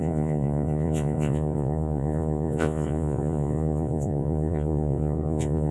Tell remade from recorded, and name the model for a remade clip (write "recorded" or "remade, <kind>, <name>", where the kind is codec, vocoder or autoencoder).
remade, vocoder, Vocos